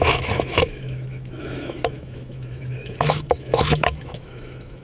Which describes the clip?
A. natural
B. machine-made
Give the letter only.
B